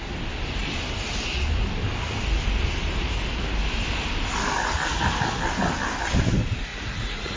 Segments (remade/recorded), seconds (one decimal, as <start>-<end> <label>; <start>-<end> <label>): 0.0-6.7 recorded; 6.7-7.4 remade